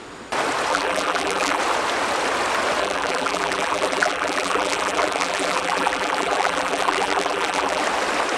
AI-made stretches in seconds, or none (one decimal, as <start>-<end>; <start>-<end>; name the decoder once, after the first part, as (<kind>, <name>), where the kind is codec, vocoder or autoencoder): 0.7-1.6 (vocoder, BigVGAN v2); 2.8-7.8

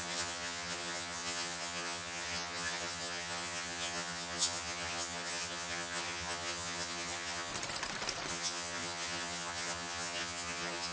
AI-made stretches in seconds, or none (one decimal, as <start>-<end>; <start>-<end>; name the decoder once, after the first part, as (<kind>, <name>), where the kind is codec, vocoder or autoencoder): 0.0-7.5 (vocoder, HiFi-GAN); 8.3-10.9

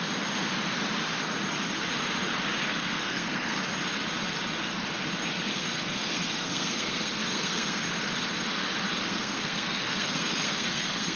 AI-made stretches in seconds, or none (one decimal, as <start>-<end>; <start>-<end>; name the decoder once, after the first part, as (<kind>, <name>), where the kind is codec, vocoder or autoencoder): 2.6-3.6 (codec, SNAC); 5.5-7.8; 9.0-11.2

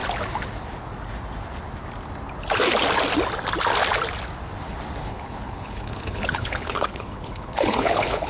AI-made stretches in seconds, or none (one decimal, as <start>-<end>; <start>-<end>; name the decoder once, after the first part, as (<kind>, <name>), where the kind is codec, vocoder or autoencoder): 5.0-8.3 (codec, HILCodec)

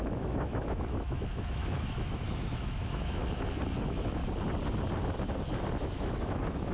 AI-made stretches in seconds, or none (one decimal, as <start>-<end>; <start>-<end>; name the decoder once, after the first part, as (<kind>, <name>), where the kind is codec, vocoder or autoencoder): 0.0-3.2 (autoencoder, DAC-VAE); 3.8-4.2; 5.8-6.7